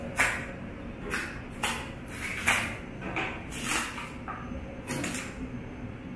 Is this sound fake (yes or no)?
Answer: no